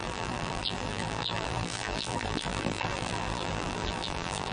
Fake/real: fake